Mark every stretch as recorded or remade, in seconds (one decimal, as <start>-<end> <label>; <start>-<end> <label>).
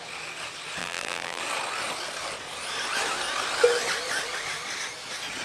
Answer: 0.0-0.8 recorded; 0.8-1.4 remade; 1.4-5.4 recorded